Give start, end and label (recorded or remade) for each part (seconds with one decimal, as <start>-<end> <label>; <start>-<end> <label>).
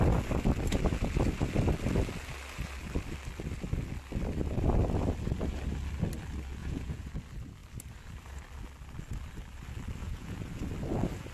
0.0-6.6 recorded; 6.6-7.1 remade; 7.1-10.0 recorded; 10.0-10.5 remade; 10.5-11.3 recorded